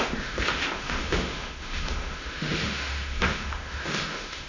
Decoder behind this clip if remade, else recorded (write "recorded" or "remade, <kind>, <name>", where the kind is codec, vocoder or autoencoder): remade, autoencoder, DAC-VAE